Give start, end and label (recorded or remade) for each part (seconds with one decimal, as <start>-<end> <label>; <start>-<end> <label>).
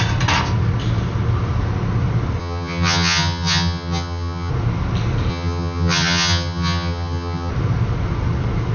0.0-2.4 recorded; 2.4-4.5 remade; 4.5-5.3 recorded; 5.3-7.5 remade; 7.5-8.7 recorded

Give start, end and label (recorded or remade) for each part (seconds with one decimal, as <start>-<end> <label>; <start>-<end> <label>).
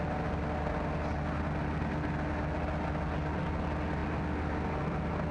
0.0-5.3 recorded